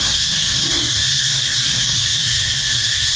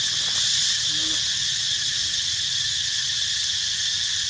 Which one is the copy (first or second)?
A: first